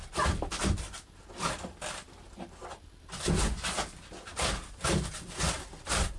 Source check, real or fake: real